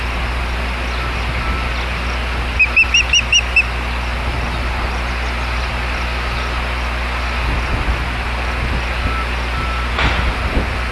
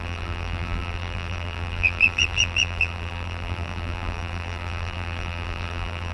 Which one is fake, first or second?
second